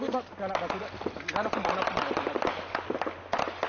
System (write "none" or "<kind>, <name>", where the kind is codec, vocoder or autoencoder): none